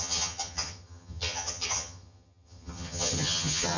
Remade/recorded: remade